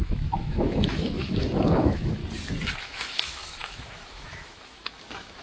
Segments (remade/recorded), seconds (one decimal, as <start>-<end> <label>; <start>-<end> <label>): 0.0-2.2 remade; 2.2-2.8 recorded; 2.8-5.4 remade